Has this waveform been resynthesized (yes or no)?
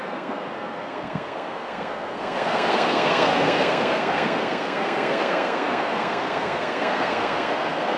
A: yes